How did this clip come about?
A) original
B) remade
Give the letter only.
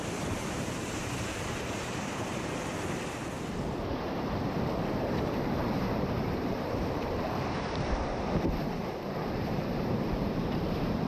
B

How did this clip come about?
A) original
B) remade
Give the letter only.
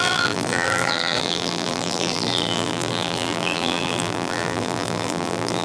B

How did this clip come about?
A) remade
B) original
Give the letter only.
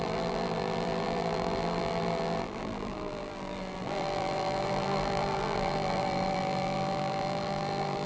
A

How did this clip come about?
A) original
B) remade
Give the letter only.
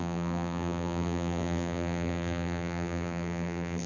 B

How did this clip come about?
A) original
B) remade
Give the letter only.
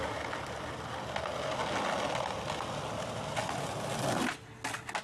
A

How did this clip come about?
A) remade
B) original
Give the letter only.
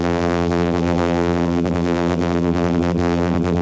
A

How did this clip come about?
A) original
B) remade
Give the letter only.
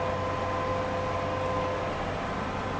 A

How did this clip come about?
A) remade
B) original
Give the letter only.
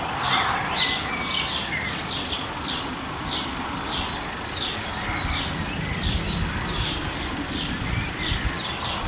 B